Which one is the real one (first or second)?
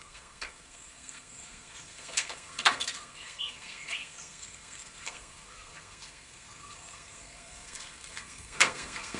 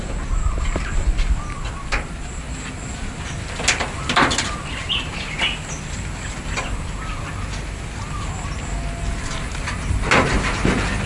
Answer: second